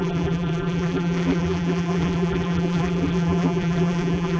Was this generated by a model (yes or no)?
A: yes